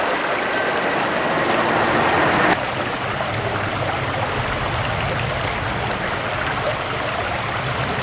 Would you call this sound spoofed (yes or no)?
no